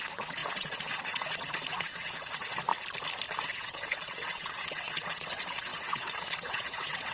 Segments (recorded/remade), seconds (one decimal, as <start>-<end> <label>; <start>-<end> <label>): 0.0-2.7 remade; 2.7-3.4 recorded; 3.4-7.1 remade